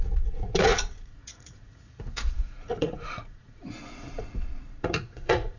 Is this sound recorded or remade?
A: remade